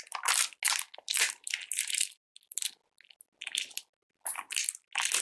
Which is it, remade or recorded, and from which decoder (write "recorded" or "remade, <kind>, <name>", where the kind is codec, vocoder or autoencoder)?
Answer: recorded